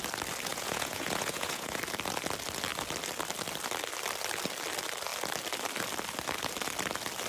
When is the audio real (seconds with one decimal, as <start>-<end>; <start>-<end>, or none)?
0.0-0.5; 1.8-7.3